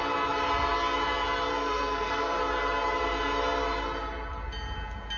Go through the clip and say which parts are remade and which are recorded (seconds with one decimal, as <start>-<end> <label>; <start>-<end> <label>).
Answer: 0.0-1.5 recorded; 1.5-2.4 remade; 2.4-5.2 recorded